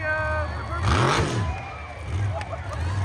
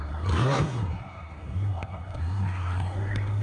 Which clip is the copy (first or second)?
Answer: second